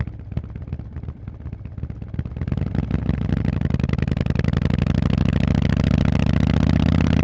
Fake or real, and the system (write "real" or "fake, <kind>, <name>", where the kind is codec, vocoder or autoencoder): real